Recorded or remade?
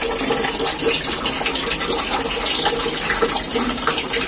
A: recorded